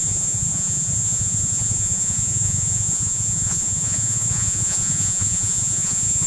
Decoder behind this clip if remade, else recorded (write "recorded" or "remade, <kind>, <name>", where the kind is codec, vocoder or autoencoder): remade, vocoder, Vocos